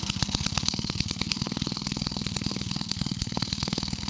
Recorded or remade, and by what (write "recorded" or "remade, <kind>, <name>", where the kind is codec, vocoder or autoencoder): remade, codec, SNAC